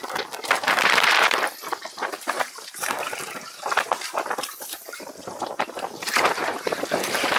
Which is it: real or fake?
fake